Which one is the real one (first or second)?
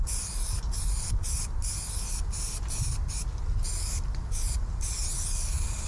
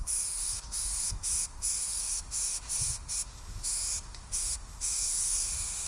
first